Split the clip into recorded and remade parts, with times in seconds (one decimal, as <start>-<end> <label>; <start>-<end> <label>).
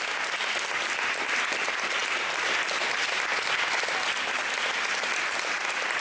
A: 0.0-6.0 recorded